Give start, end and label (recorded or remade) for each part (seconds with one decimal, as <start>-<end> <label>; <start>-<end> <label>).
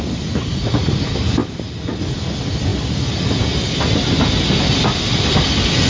0.0-5.9 recorded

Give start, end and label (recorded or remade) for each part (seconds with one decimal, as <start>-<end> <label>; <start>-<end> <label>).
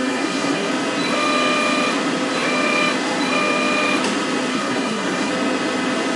0.0-0.7 remade; 0.7-4.5 recorded; 4.5-5.3 remade; 5.3-6.2 recorded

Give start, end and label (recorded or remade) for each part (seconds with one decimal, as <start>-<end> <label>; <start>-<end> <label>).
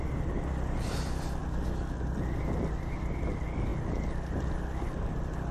0.0-5.5 recorded